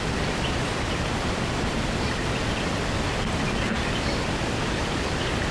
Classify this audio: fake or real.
real